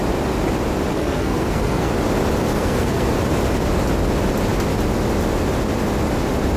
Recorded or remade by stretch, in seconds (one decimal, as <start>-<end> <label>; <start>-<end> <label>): 0.0-0.9 recorded; 0.9-1.9 remade; 1.9-2.5 recorded; 2.5-3.1 remade; 3.1-6.6 recorded

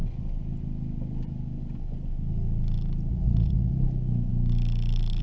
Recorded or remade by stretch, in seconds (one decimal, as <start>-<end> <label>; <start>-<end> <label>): 0.0-3.1 recorded; 3.1-3.7 remade; 3.7-5.2 recorded

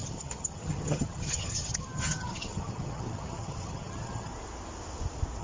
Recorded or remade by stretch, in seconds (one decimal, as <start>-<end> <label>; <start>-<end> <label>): 0.0-4.3 remade; 4.3-5.4 recorded

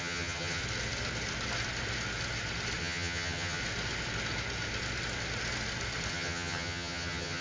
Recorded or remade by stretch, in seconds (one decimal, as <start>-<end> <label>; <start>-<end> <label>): 0.0-0.6 remade; 0.6-2.8 recorded; 2.8-3.6 remade; 3.6-6.1 recorded; 6.1-7.4 remade

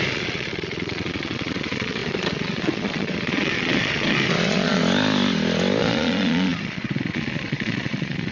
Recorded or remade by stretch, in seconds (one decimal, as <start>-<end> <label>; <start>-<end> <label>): 0.0-4.8 remade; 4.8-5.8 recorded; 5.8-8.3 remade

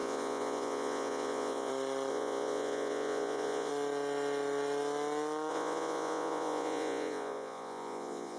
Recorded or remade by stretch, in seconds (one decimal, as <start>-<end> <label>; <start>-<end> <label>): 0.0-1.7 remade; 1.7-2.1 recorded; 2.1-3.7 remade; 3.7-5.5 recorded; 5.5-8.4 remade

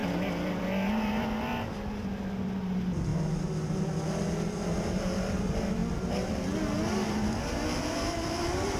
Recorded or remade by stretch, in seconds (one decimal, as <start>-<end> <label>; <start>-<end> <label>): 0.0-8.8 recorded

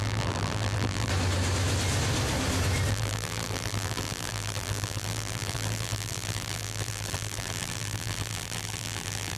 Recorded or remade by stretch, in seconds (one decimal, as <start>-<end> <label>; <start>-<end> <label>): 0.0-1.1 remade; 1.1-2.9 recorded; 2.9-9.4 remade